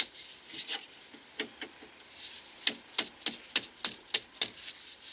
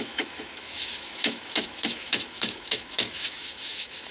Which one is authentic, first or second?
first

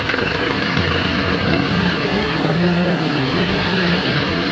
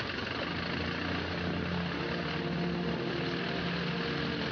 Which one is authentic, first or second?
second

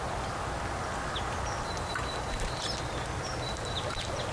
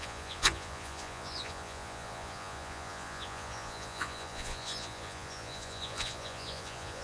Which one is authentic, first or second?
first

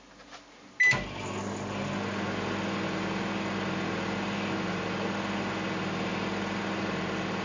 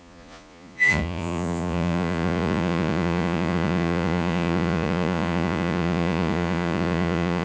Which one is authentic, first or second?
first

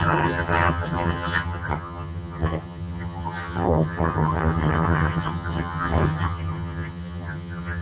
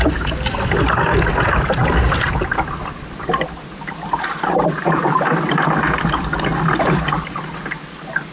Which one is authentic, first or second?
second